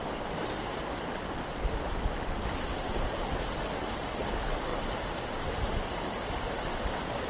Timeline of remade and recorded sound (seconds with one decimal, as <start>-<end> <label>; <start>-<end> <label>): 0.0-7.3 recorded

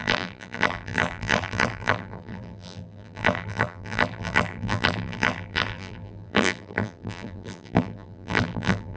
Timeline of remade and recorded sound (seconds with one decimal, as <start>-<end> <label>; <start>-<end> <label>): 0.0-9.0 remade